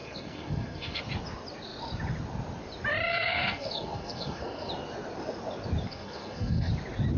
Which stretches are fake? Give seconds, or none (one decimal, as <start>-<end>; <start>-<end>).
0.0-1.0; 3.1-4.7; 5.9-6.7